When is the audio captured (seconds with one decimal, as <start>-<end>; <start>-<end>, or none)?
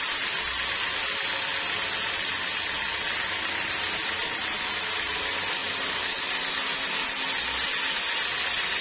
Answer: 0.0-8.8